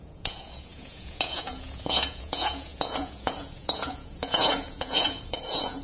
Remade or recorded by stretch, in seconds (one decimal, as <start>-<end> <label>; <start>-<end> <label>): 0.0-5.8 remade